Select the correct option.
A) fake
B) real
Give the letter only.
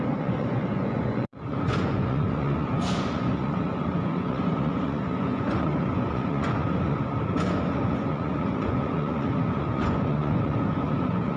A